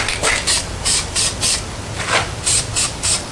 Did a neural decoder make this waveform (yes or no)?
yes